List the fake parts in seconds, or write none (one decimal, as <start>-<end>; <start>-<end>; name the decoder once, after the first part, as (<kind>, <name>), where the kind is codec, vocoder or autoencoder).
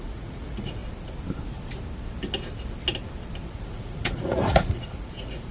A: 0.0-0.8 (vocoder, Vocos); 3.5-5.5